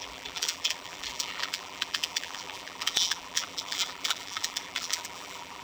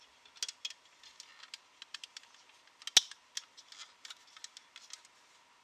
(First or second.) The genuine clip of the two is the second